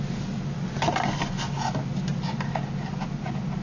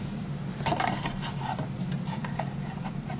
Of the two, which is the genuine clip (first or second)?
first